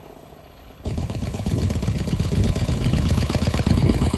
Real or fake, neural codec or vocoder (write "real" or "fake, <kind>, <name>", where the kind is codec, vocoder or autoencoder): fake, codec, HILCodec